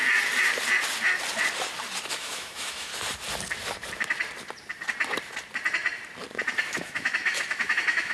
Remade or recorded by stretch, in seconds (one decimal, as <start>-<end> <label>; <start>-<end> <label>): 0.0-2.1 recorded; 2.1-2.9 remade; 2.9-6.6 recorded; 6.6-8.1 remade